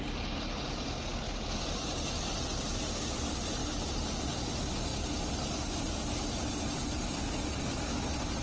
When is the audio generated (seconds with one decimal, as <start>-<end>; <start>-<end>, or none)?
3.6-4.5